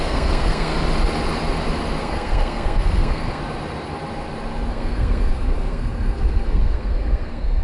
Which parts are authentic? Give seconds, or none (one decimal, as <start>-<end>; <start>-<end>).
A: 0.7-2.0; 3.4-4.7